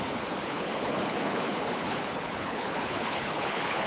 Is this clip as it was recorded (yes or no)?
no